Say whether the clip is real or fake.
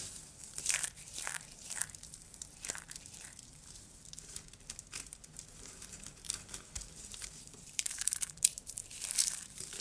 fake